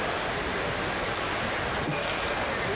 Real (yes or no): yes